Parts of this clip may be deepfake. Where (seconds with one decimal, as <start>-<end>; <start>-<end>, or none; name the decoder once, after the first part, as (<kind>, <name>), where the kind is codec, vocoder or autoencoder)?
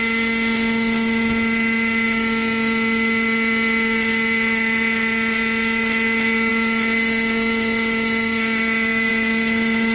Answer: none